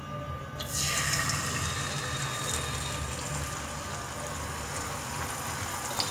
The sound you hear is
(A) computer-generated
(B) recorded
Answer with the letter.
B